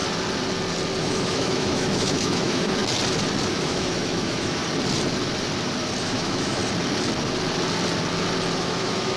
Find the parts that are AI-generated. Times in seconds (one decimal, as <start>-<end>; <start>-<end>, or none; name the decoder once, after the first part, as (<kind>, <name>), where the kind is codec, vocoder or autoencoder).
1.0-2.8 (autoencoder, DAC-VAE); 3.5-4.6; 6.0-6.6; 8.6-9.2